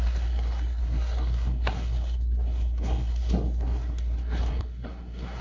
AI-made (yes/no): yes